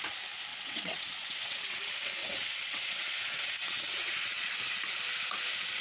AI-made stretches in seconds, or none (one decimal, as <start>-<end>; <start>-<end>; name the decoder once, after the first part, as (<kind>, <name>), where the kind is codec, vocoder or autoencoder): 0.5-1.8 (vocoder, WaveNeXt); 2.2-4.8